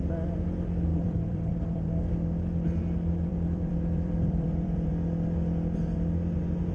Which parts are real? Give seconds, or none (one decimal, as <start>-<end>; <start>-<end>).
0.0-0.9; 2.0-3.3; 4.9-6.7